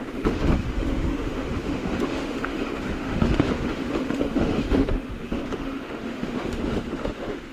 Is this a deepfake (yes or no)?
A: yes